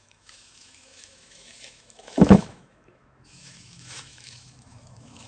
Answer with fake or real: fake